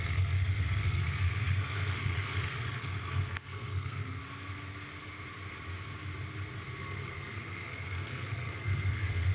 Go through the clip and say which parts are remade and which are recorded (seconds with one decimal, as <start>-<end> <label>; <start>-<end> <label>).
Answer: 0.0-4.2 remade; 4.2-6.8 recorded; 6.8-9.3 remade